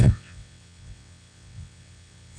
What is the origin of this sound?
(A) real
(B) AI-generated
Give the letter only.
B